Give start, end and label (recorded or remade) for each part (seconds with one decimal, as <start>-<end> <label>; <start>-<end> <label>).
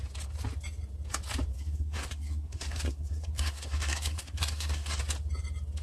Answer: 0.0-1.5 recorded; 1.5-5.0 remade; 5.0-5.8 recorded